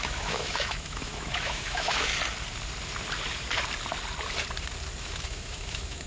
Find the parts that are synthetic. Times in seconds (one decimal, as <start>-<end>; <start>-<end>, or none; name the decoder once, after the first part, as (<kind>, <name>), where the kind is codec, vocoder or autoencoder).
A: 0.0-2.1 (autoencoder, DAC-VAE); 5.0-6.1